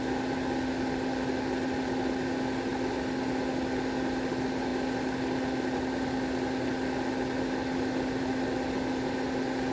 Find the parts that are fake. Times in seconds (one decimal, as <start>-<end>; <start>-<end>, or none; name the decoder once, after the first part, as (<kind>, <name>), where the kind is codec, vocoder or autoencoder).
none